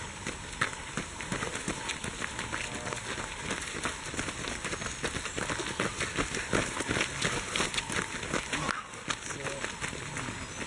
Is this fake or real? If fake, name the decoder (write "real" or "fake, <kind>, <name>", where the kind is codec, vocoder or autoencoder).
real